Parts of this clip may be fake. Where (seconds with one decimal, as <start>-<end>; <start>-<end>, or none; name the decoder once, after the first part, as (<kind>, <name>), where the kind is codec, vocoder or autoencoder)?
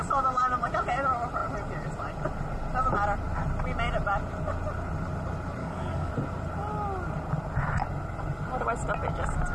5.6-6.1 (codec, DAC)